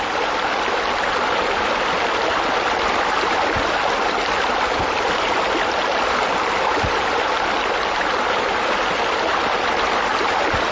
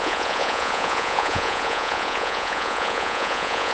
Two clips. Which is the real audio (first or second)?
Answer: first